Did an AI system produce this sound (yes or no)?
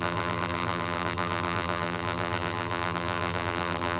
yes